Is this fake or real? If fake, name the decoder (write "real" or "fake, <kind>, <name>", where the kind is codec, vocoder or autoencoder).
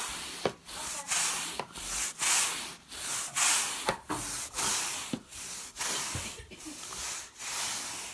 fake, vocoder, BigVGAN v2